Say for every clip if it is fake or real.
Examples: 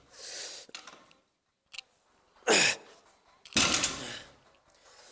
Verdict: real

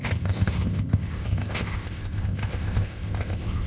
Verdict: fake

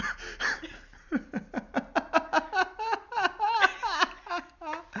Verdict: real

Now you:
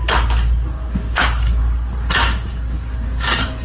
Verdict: real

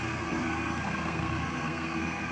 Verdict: fake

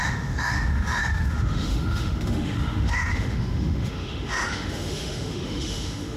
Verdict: fake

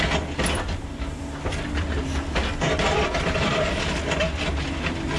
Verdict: real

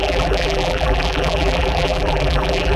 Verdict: fake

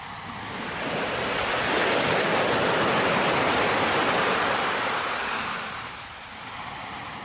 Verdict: real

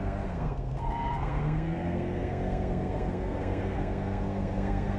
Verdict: fake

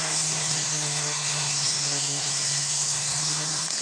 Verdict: fake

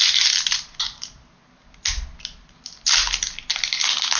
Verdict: real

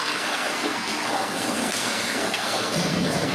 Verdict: fake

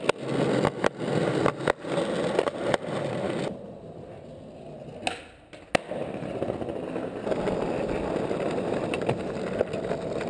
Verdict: real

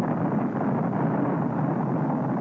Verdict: real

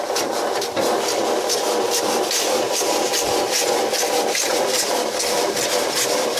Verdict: real